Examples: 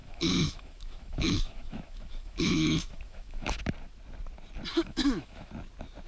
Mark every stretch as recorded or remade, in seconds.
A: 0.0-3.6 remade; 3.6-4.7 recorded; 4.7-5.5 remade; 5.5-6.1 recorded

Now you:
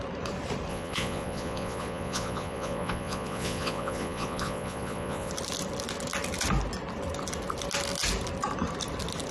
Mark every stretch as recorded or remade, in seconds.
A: 0.0-0.7 recorded; 0.7-5.3 remade; 5.3-9.3 recorded

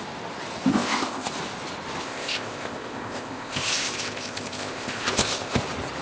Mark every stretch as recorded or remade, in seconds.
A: 0.0-0.7 recorded; 0.7-1.3 remade; 1.3-2.0 recorded; 2.0-5.6 remade; 5.6-6.0 recorded

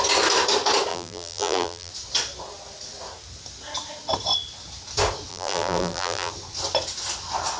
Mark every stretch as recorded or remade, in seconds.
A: 0.0-0.9 recorded; 0.9-1.9 remade; 1.9-5.3 recorded; 5.3-6.3 remade; 6.3-7.6 recorded

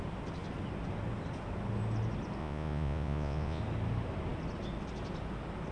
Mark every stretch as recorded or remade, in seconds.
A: 0.0-2.4 recorded; 2.4-3.6 remade; 3.6-5.7 recorded

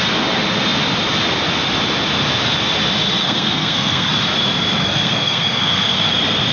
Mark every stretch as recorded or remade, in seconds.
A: 0.0-3.2 recorded; 3.2-4.1 remade; 4.1-4.8 recorded; 4.8-6.1 remade; 6.1-6.5 recorded